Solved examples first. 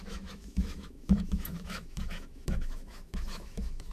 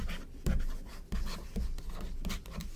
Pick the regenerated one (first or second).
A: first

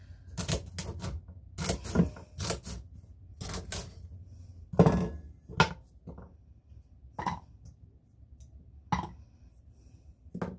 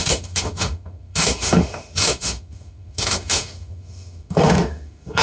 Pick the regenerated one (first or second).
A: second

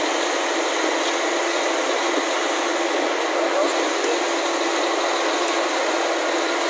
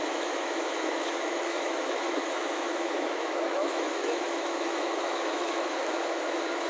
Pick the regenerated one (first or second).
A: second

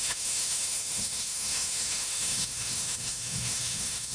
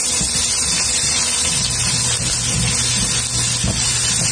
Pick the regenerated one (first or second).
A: first